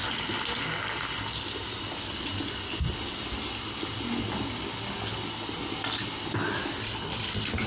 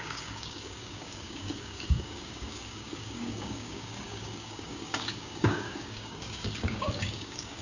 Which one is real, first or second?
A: first